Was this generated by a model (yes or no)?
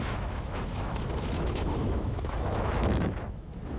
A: yes